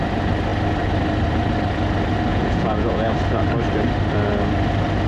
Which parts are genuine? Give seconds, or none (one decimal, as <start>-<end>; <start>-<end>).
0.0-2.3; 3.1-5.1